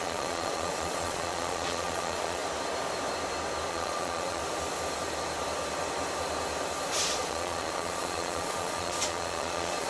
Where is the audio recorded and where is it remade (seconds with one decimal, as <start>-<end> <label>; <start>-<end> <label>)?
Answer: 0.0-2.4 remade; 2.4-3.7 recorded; 3.7-4.4 remade; 4.4-7.0 recorded; 7.0-9.9 remade